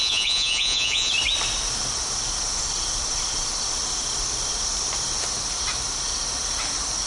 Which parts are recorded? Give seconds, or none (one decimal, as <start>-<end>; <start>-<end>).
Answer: 1.1-7.1